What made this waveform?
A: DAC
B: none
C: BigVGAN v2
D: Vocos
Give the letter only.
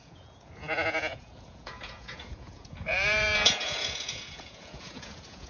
D